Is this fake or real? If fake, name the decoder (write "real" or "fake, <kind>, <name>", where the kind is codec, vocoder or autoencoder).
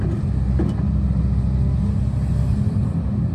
real